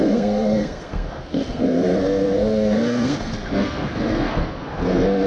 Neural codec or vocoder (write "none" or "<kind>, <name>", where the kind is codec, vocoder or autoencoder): codec, SNAC